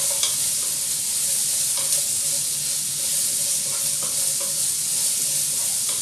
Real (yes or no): yes